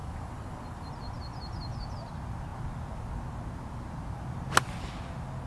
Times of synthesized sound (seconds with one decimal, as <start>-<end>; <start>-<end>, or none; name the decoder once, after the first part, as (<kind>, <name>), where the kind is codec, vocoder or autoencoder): 0.0-0.9 (vocoder, BigVGAN v2)